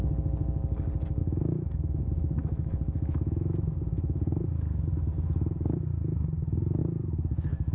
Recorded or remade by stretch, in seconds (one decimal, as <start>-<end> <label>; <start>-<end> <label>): 0.0-1.2 recorded; 1.2-4.4 remade; 4.4-7.7 recorded